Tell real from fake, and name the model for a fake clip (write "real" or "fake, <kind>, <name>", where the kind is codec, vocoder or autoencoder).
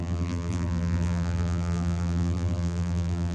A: fake, vocoder, BigVGAN v2